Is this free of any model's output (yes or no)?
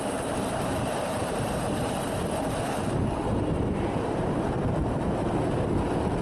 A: no